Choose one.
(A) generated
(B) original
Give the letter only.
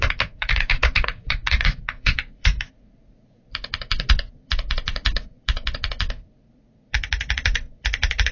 A